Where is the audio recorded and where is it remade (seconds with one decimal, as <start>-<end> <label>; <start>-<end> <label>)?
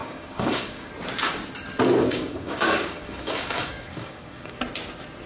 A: 0.0-0.9 remade; 0.9-2.0 recorded; 2.0-4.6 remade; 4.6-5.3 recorded